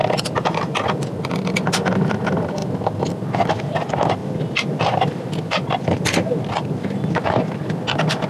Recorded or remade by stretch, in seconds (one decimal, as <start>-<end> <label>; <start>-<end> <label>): 0.0-0.8 remade; 0.8-8.3 recorded

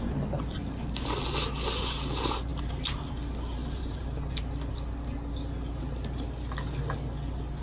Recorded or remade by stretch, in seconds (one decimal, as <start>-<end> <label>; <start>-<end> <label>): 0.0-2.5 recorded; 2.5-3.1 remade; 3.1-3.6 recorded; 3.6-4.4 remade; 4.4-7.6 recorded

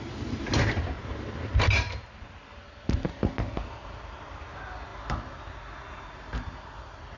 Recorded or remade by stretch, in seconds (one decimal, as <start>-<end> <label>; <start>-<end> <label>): 0.0-7.2 recorded

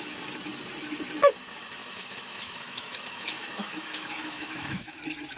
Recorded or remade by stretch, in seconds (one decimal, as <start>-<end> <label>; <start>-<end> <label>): 0.0-1.8 recorded; 1.8-5.0 remade; 5.0-5.4 recorded

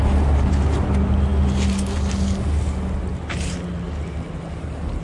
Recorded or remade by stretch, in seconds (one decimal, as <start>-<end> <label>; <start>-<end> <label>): 0.0-5.0 recorded

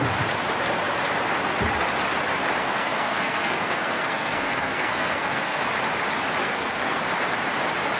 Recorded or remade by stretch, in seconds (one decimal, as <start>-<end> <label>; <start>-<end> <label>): 0.0-2.6 recorded; 2.6-5.6 remade; 5.6-6.4 recorded; 6.4-7.0 remade; 7.0-8.0 recorded

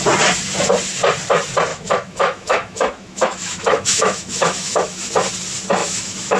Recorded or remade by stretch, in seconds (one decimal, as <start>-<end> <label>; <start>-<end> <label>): 0.0-1.7 recorded; 1.7-5.1 remade; 5.1-5.8 recorded; 5.8-6.4 remade

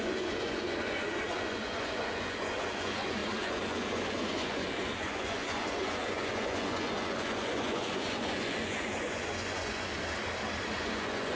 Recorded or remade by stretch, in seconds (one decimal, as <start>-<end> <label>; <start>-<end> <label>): 0.0-9.9 remade; 9.9-10.8 recorded; 10.8-11.4 remade